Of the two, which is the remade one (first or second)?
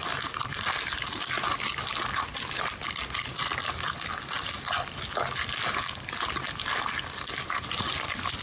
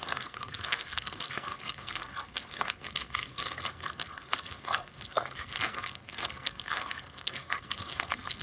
second